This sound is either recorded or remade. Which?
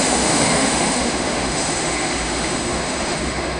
remade